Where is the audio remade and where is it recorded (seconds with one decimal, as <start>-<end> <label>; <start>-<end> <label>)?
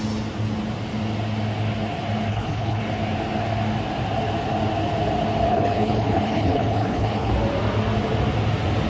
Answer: 0.0-2.3 recorded; 2.3-2.8 remade; 2.8-5.5 recorded; 5.5-7.3 remade; 7.3-8.9 recorded